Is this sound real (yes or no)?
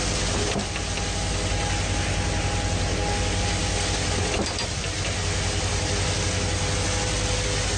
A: yes